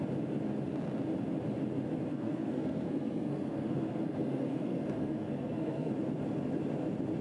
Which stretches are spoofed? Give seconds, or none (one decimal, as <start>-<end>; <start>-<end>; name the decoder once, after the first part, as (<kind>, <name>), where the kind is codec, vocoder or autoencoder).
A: 2.1-5.9 (codec, SNAC)